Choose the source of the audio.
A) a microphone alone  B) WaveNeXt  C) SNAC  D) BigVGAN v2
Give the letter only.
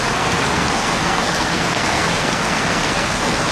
C